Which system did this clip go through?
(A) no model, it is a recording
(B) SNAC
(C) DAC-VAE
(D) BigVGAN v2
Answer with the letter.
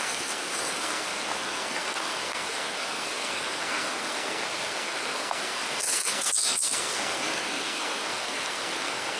B